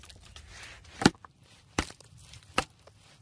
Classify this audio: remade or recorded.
remade